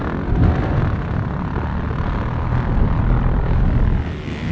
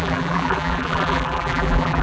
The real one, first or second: first